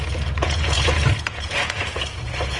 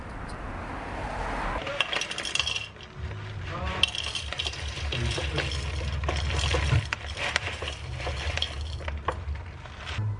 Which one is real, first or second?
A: second